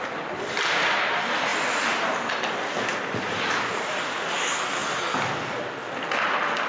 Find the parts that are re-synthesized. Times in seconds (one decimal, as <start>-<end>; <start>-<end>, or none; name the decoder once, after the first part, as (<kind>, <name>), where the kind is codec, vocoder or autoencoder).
none